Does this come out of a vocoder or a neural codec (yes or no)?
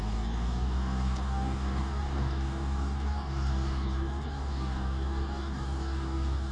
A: yes